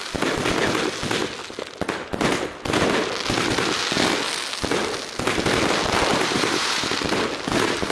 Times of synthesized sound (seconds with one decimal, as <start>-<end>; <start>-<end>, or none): 6.1-7.3

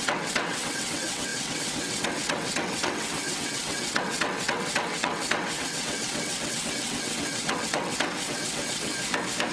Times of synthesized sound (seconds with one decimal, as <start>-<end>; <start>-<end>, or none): 0.0-8.9

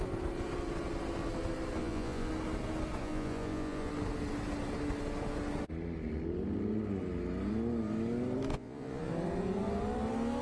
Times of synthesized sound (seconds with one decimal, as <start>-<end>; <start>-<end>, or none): 1.8-2.3; 3.0-3.9; 8.5-9.1

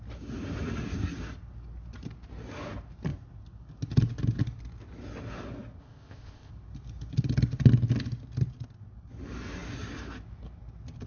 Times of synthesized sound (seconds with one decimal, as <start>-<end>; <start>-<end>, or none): 5.8-6.5

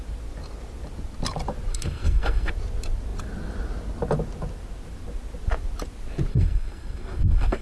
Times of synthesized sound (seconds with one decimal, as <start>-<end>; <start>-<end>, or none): 1.7-2.5; 6.3-7.6

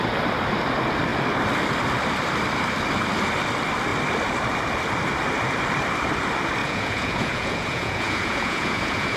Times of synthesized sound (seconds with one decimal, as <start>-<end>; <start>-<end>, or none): 6.6-9.2